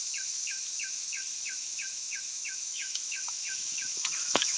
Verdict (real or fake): fake